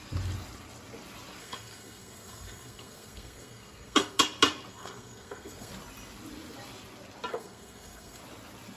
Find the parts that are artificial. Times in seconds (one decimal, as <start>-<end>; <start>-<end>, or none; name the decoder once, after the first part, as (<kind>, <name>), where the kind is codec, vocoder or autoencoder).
1.4-4.2 (codec, SNAC); 4.7-5.7; 7.3-8.2